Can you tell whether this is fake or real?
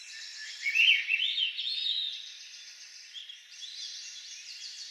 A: real